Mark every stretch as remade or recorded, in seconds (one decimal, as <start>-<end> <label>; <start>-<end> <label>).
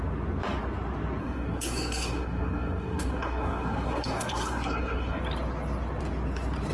0.0-1.2 recorded; 1.2-5.2 remade; 5.2-6.7 recorded